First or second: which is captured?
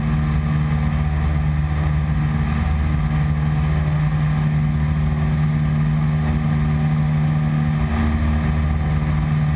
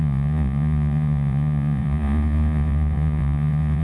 first